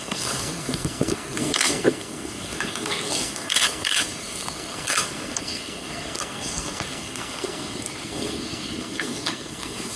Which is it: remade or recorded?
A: remade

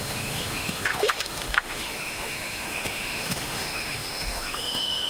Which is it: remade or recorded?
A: remade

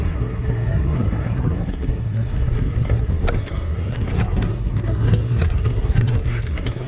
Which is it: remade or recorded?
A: remade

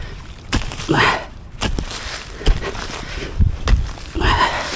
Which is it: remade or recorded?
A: recorded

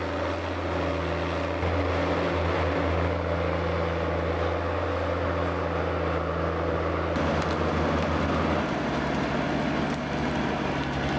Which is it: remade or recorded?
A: recorded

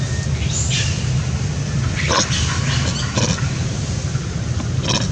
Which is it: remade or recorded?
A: recorded